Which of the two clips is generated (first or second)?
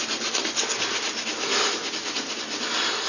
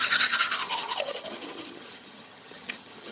second